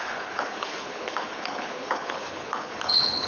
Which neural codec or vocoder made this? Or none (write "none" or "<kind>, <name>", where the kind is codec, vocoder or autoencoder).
codec, HILCodec